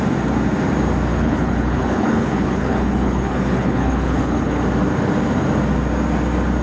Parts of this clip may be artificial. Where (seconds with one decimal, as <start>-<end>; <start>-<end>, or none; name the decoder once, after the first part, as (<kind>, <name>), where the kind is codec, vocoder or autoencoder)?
1.1-4.6 (codec, HILCodec)